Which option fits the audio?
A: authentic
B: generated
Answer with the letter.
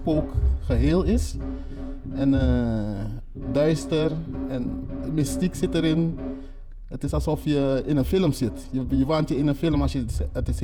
B